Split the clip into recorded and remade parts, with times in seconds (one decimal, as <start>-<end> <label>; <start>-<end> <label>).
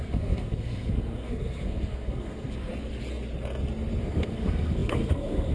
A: 0.0-2.7 remade; 2.7-4.0 recorded; 4.0-5.5 remade